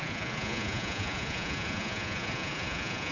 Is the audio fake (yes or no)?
yes